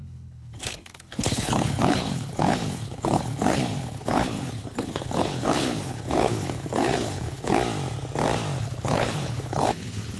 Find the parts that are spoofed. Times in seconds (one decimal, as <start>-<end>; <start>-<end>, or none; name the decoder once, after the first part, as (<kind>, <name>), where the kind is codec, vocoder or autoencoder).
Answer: 0.0-7.6 (codec, HILCodec); 8.6-10.2